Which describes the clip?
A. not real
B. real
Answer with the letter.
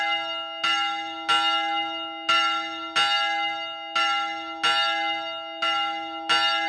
B